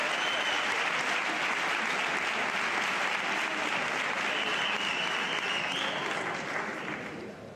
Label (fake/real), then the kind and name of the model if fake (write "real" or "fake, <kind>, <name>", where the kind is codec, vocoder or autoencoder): real